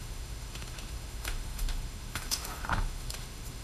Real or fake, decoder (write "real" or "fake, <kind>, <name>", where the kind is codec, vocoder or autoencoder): fake, autoencoder, DAC-VAE